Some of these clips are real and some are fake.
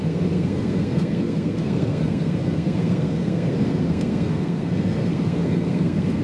fake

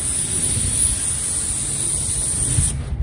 real